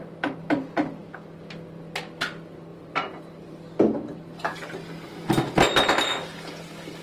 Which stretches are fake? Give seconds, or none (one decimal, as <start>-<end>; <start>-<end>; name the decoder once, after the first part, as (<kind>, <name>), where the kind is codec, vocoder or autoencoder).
2.7-3.6 (vocoder, BigVGAN v2)